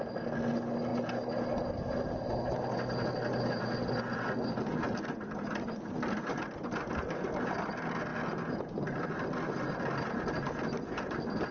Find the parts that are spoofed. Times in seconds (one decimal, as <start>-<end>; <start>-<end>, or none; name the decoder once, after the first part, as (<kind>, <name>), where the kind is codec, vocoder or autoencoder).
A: none